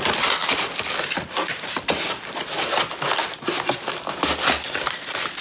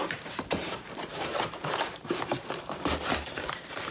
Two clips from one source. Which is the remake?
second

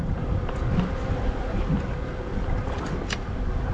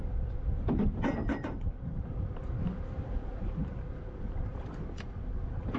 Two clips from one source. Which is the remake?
second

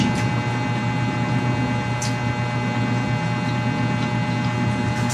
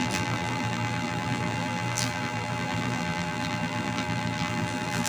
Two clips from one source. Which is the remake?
second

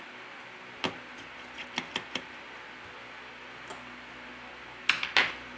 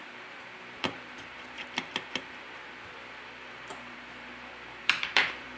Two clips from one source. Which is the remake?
second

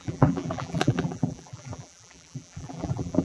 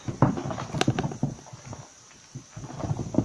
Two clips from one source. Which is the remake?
first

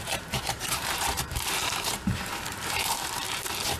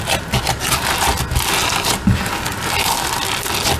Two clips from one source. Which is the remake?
first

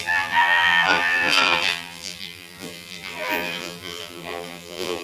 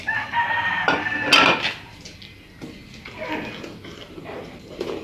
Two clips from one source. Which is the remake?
first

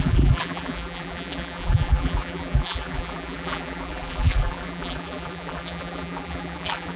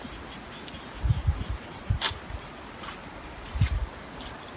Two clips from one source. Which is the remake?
first